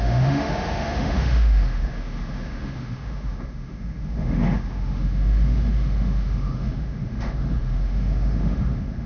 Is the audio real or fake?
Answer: fake